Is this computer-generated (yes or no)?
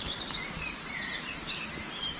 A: yes